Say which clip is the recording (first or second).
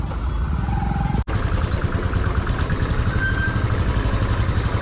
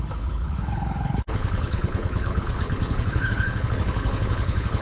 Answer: first